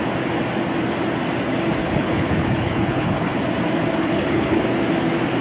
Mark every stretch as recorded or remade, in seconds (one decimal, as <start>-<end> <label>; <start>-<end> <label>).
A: 0.0-1.8 recorded; 1.8-3.4 remade; 3.4-4.0 recorded; 4.0-4.6 remade; 4.6-5.4 recorded